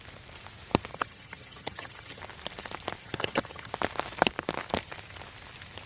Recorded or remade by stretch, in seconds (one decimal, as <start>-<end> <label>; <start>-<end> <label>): 0.0-0.9 recorded; 0.9-2.2 remade; 2.2-3.0 recorded; 3.0-3.7 remade; 3.7-5.9 recorded